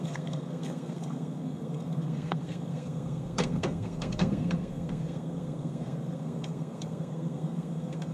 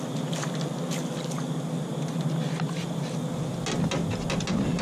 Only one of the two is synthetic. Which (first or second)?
first